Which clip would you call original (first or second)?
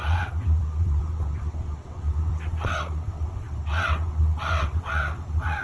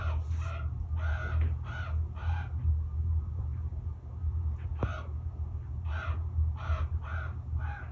second